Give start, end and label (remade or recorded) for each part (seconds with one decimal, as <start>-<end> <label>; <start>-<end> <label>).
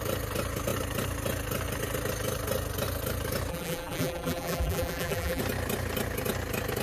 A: 0.0-3.5 recorded; 3.5-5.4 remade; 5.4-6.8 recorded